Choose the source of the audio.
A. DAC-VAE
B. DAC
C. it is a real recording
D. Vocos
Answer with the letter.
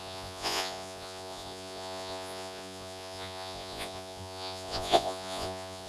D